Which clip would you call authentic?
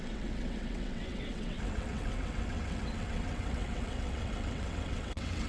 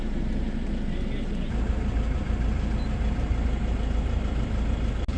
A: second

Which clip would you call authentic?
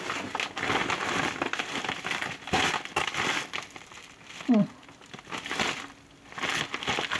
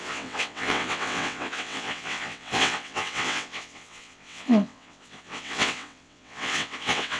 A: first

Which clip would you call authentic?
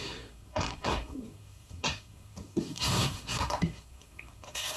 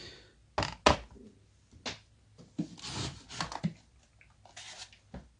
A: second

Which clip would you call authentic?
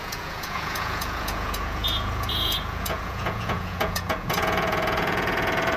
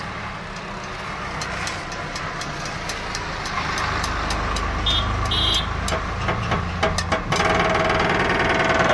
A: second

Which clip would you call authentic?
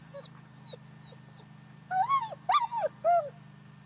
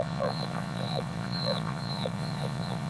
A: first